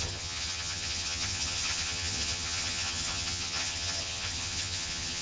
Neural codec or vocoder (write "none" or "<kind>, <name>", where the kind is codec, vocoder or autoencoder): vocoder, HiFi-GAN